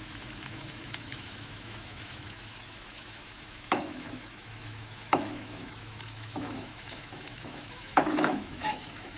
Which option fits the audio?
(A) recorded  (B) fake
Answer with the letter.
B